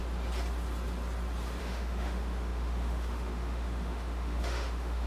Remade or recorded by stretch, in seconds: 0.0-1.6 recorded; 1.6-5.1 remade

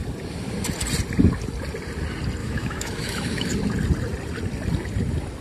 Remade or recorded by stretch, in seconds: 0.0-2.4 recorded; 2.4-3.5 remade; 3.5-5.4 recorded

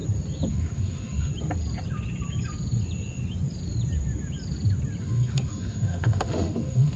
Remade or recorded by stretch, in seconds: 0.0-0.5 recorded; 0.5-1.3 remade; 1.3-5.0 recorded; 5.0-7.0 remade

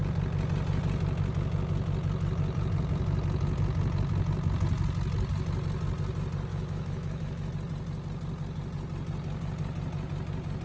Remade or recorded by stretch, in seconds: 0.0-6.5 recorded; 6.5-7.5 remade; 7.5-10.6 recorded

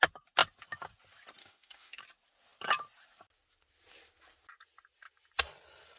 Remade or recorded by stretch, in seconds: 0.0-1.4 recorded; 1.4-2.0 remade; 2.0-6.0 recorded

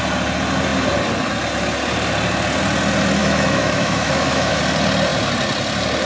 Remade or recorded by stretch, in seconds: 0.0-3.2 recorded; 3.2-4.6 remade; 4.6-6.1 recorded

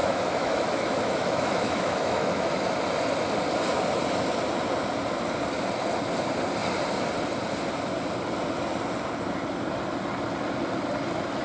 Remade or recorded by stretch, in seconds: 0.0-2.5 remade; 2.5-11.4 recorded

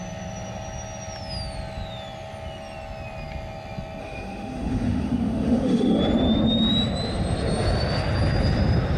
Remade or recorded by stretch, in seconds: 0.0-4.0 recorded; 4.0-6.0 remade; 6.0-9.0 recorded